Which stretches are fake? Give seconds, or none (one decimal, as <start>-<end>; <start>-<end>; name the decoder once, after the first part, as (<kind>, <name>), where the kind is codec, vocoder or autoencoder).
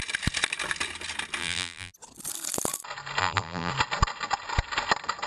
1.4-1.9 (vocoder, BigVGAN v2); 3.2-3.7